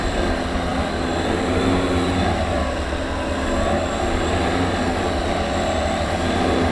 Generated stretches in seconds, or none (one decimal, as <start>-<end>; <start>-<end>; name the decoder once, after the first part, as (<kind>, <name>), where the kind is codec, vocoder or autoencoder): none